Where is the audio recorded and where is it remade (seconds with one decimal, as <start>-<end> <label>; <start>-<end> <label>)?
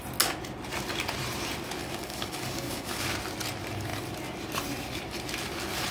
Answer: 0.0-1.8 recorded; 1.8-3.0 remade; 3.0-5.9 recorded